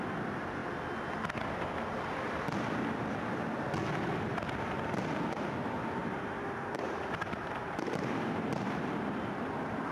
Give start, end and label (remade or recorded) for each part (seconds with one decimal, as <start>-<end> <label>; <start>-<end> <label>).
0.0-6.0 recorded; 6.0-9.3 remade; 9.3-9.9 recorded

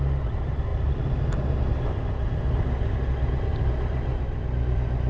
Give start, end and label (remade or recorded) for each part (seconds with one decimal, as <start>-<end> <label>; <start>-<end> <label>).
0.0-3.5 recorded; 3.5-4.6 remade; 4.6-5.1 recorded

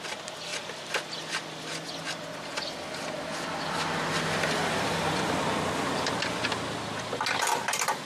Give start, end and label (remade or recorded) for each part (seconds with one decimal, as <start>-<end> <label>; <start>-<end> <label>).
0.0-0.5 recorded; 0.5-5.3 remade; 5.3-8.1 recorded